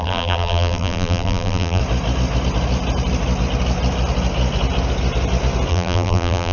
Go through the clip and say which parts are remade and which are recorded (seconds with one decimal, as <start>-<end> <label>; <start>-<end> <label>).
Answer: 0.0-1.8 remade; 1.8-5.7 recorded; 5.7-6.5 remade